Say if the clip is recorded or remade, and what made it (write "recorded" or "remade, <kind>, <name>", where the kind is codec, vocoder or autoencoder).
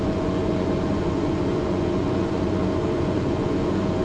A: remade, vocoder, Vocos